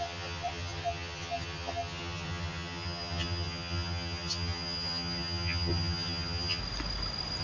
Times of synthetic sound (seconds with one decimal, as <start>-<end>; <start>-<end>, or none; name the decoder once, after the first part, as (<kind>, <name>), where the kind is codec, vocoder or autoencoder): 0.0-6.6 (vocoder, HiFi-GAN)